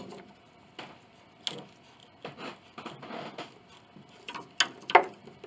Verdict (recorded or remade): recorded